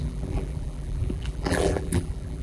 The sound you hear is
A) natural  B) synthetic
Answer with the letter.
B